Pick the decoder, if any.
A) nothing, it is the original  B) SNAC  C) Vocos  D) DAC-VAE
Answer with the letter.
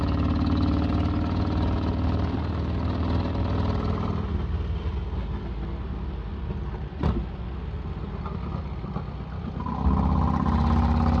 A